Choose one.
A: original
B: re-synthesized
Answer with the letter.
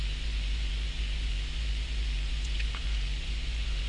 B